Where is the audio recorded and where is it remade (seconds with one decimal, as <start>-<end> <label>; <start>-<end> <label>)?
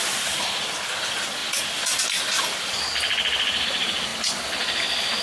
0.0-5.2 recorded